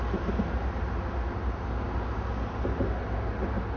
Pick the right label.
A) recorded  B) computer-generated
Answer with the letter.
A